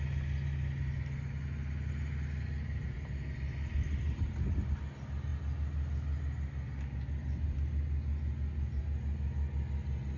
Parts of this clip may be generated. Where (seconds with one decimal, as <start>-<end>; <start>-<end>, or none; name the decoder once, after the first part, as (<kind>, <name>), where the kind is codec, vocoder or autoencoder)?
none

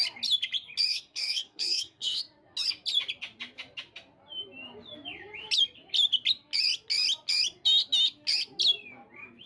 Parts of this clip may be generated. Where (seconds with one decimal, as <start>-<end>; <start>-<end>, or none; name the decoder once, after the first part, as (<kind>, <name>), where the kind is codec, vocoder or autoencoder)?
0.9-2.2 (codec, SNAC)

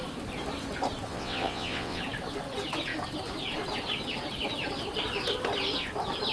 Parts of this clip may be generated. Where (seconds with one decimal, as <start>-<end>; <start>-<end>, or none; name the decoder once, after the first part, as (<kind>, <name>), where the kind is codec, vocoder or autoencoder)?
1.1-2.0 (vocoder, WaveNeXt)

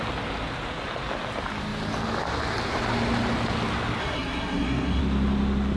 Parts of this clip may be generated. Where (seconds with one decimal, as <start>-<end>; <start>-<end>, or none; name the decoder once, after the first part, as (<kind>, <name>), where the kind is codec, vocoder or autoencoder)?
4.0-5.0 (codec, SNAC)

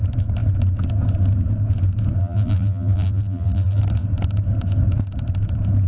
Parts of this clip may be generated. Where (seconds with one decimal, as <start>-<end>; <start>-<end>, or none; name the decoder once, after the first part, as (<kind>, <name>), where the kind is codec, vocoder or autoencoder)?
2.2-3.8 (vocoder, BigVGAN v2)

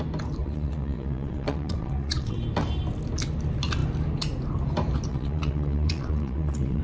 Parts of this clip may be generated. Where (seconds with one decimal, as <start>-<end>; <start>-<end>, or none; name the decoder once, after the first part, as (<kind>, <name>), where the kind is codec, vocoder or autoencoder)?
0.4-2.4 (vocoder, WaveNeXt); 5.1-6.8